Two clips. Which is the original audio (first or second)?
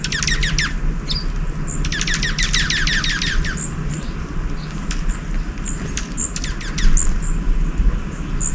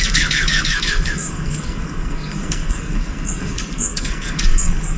first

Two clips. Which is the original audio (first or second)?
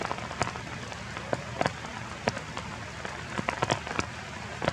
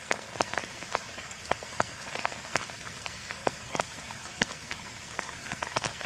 first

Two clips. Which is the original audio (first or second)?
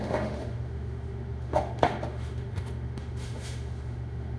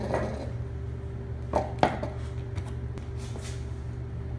second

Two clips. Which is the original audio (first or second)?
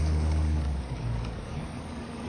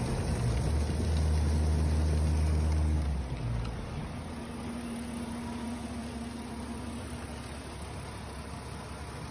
second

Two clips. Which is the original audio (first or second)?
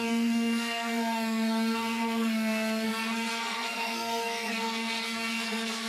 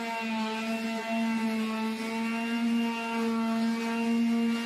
second